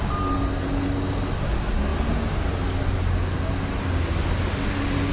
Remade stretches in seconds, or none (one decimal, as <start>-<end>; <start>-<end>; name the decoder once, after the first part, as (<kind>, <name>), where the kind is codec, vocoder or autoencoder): none